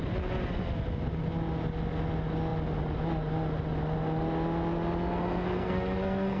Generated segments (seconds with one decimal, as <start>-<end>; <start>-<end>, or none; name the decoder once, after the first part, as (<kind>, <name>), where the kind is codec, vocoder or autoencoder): 5.1-6.4 (codec, SNAC)